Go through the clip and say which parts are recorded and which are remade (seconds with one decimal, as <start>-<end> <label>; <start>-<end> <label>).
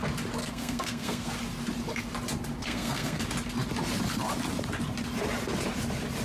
0.0-0.4 recorded; 0.4-1.3 remade; 1.3-2.6 recorded; 2.6-3.2 remade; 3.2-6.2 recorded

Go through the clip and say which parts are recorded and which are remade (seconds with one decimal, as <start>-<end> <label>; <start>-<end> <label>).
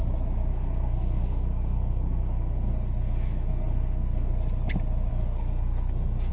0.0-0.5 recorded; 0.5-4.3 remade; 4.3-5.1 recorded; 5.1-6.3 remade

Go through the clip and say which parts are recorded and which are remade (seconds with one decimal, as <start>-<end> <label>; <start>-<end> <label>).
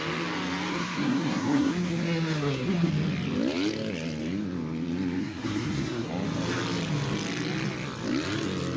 0.0-0.7 recorded; 0.7-2.9 remade; 2.9-5.2 recorded; 5.2-6.1 remade; 6.1-8.8 recorded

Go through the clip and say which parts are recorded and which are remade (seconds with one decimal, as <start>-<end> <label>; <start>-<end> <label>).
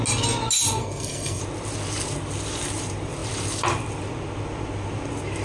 0.0-0.8 recorded; 0.8-1.4 remade; 1.4-5.4 recorded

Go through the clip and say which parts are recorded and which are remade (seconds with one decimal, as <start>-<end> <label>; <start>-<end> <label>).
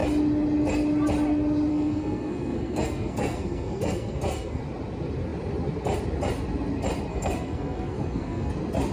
0.0-1.7 recorded; 1.7-4.6 remade; 4.6-7.1 recorded; 7.1-8.5 remade; 8.5-8.9 recorded